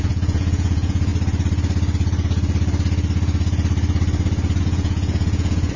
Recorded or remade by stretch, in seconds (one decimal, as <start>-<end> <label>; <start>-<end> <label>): 0.0-1.1 remade; 1.1-4.6 recorded; 4.6-5.8 remade